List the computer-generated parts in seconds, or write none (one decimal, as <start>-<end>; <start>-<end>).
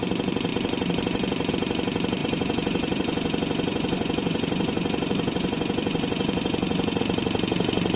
2.2-7.0